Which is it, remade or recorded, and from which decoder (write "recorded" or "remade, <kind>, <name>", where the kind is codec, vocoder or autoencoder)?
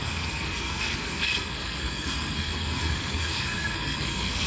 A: remade, codec, SNAC